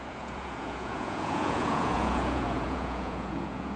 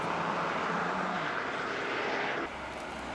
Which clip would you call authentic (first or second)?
second